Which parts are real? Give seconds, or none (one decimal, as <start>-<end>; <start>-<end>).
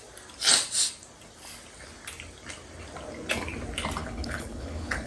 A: 0.0-4.0